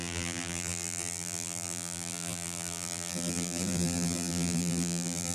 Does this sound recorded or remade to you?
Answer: remade